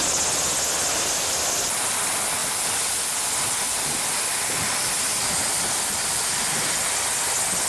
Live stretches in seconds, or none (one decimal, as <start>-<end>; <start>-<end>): 0.0-2.4; 7.0-7.7